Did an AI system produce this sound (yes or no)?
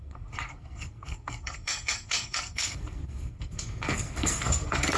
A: yes